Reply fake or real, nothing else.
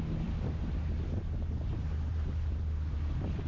real